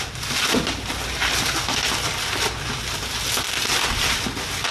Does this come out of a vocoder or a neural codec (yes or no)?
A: no